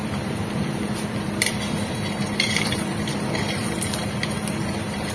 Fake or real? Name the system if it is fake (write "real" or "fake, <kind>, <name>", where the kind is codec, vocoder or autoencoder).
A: fake, vocoder, BigVGAN v2